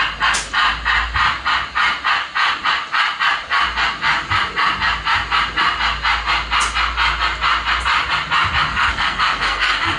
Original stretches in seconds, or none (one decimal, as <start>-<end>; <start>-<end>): 0.0-8.7